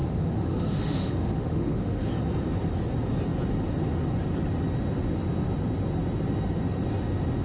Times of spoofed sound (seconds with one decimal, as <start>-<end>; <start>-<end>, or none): 0.0-2.1